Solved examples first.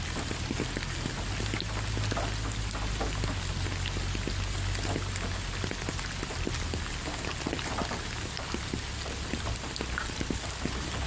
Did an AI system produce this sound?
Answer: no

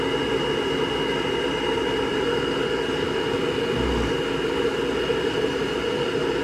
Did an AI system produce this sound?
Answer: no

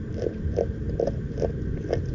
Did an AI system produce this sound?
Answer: no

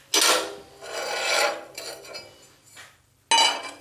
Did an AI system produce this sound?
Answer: no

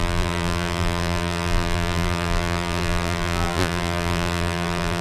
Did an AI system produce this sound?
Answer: yes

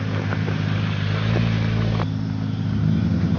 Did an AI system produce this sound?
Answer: no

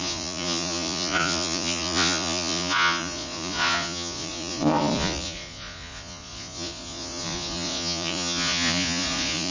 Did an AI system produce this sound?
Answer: yes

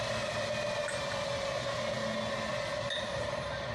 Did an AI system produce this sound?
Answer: no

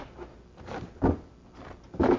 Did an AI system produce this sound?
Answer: no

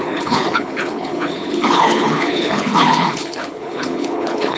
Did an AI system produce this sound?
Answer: yes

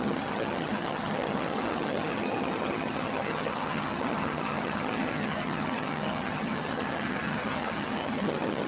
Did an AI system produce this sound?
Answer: yes